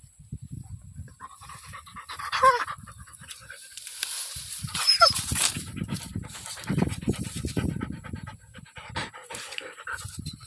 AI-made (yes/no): yes